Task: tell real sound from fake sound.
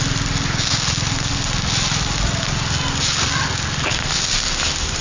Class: real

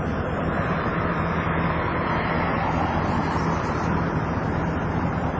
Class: real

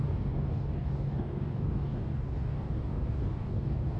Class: fake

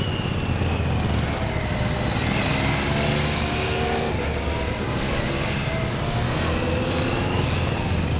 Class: real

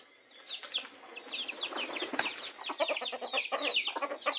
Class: real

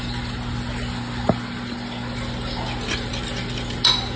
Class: real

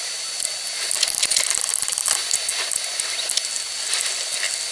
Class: real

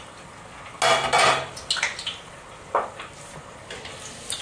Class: real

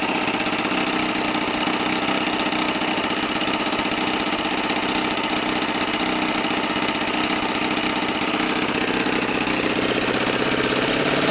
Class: real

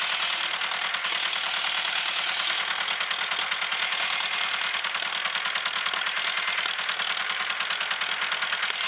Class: real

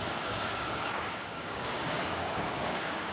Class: fake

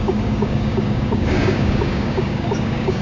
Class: fake